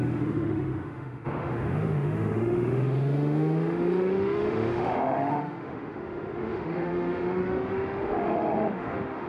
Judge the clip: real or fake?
fake